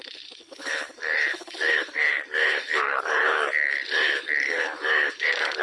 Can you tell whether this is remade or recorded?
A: remade